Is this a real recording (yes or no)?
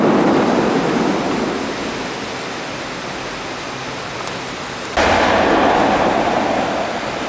yes